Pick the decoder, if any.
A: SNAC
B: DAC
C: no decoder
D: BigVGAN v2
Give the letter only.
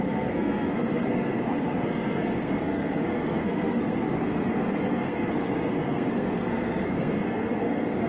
A